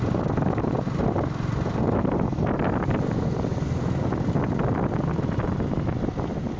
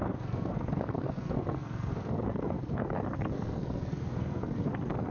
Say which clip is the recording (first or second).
first